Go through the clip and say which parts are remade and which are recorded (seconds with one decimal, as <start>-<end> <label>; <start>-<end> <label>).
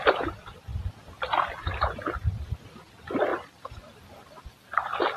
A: 0.0-0.7 recorded; 0.7-2.8 remade; 2.8-5.2 recorded